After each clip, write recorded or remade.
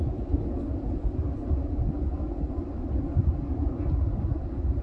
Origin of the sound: recorded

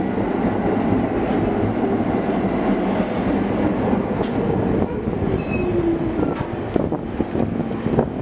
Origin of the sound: recorded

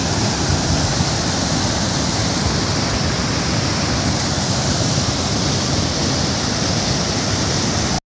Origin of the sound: recorded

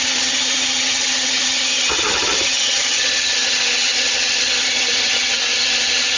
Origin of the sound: remade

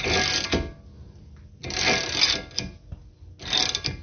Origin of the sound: recorded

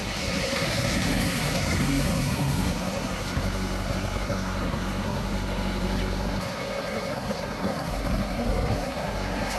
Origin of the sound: remade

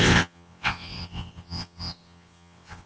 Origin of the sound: remade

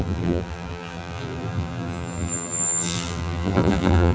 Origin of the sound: remade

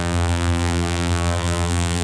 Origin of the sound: remade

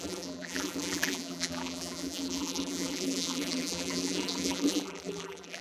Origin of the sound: remade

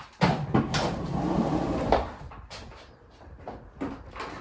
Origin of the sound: recorded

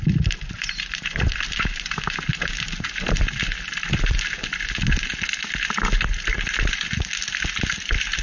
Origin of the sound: recorded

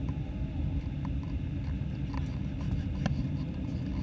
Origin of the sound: recorded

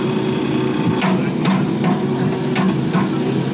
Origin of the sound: recorded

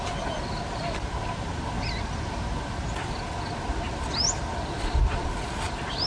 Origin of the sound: recorded